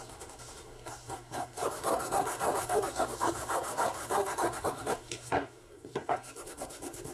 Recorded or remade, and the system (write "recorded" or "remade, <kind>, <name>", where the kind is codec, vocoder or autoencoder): remade, codec, SNAC